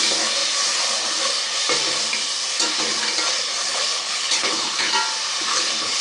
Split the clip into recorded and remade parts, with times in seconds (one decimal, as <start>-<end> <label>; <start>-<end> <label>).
0.0-3.6 recorded; 3.6-4.9 remade; 4.9-5.5 recorded; 5.5-6.0 remade